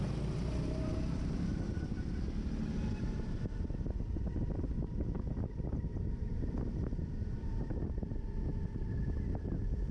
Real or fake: real